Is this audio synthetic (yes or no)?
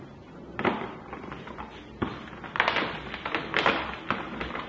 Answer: no